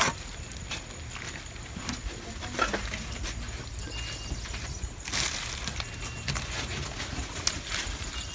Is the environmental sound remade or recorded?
recorded